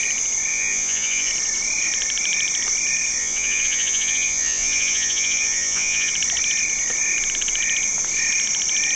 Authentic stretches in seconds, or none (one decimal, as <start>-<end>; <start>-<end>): 0.0-0.5; 1.3-3.2; 6.1-9.0